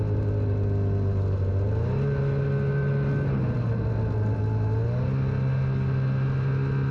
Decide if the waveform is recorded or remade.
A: recorded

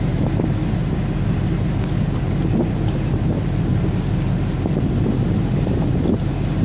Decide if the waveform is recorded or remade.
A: recorded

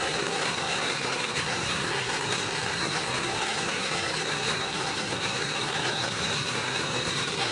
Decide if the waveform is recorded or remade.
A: remade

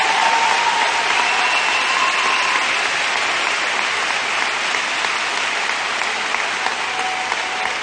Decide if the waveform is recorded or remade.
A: recorded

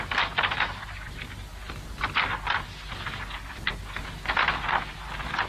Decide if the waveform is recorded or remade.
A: recorded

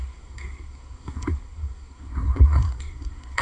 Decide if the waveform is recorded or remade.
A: remade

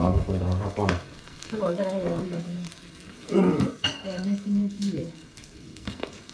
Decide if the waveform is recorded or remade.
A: remade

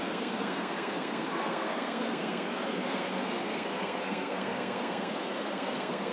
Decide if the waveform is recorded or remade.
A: remade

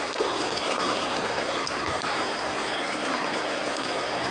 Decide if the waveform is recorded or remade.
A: remade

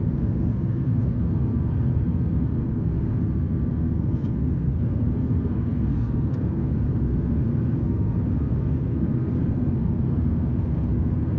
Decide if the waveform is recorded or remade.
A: remade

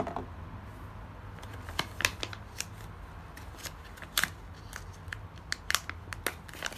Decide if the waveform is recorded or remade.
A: recorded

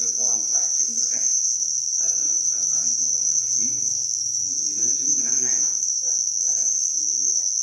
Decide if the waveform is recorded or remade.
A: remade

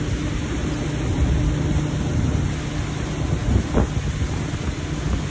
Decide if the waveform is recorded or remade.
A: recorded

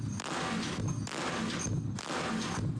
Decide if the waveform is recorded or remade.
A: recorded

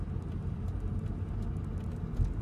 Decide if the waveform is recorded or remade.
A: recorded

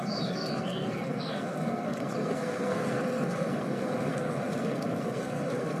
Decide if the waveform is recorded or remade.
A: remade